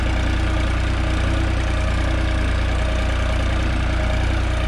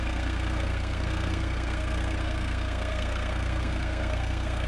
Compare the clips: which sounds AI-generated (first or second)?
second